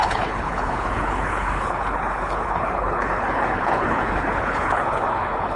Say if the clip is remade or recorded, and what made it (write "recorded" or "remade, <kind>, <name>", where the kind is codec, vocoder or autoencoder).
remade, codec, HILCodec